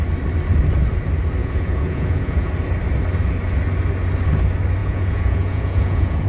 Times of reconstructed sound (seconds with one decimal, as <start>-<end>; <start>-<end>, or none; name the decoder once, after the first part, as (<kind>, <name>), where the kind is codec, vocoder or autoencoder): 1.4-2.5 (vocoder, Vocos); 4.8-6.3